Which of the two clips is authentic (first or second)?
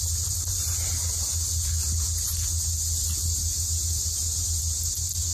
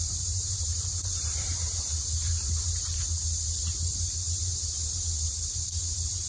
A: first